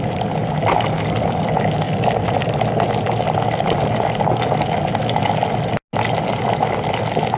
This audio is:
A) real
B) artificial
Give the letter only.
A